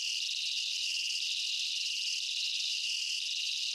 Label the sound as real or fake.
real